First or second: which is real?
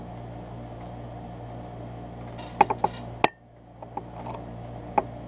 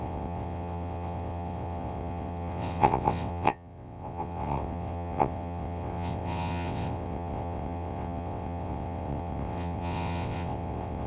first